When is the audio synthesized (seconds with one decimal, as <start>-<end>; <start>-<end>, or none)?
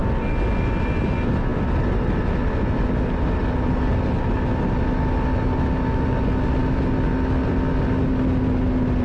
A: none